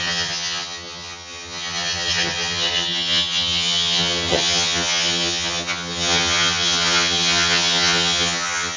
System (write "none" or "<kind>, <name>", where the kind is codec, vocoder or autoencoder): vocoder, HiFi-GAN